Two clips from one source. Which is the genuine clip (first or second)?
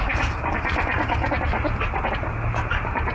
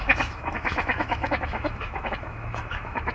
first